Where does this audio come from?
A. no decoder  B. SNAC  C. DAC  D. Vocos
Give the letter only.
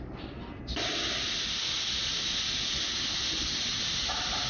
A